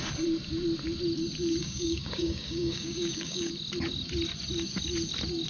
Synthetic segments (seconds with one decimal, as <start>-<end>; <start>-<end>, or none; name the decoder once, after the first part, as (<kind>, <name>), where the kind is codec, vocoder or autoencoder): 1.6-3.5 (codec, DAC)